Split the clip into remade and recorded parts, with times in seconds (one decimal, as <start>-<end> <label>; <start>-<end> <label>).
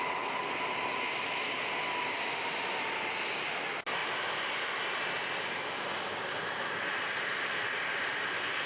0.0-8.7 recorded